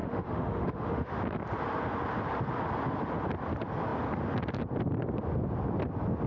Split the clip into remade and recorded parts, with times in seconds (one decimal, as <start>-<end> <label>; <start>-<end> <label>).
0.0-1.2 remade; 1.2-6.3 recorded